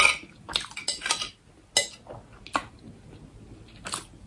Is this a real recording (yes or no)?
yes